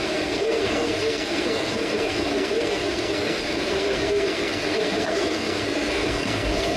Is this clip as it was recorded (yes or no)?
no